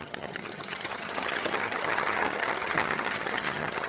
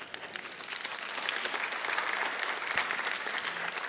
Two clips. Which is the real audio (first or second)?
second